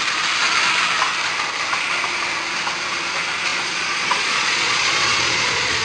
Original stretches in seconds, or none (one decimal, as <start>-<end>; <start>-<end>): 0.0-3.5